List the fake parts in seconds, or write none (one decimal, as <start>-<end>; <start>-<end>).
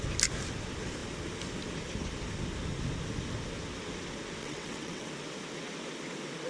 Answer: 4.4-5.1